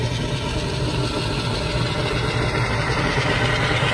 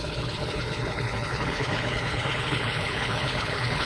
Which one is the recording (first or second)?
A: first